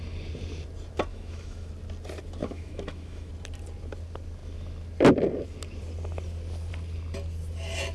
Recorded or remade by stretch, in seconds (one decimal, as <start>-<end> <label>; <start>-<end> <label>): 0.0-1.1 recorded; 1.1-1.7 remade; 1.7-2.4 recorded; 2.4-3.3 remade; 3.3-7.9 recorded